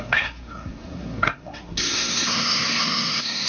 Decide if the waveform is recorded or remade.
remade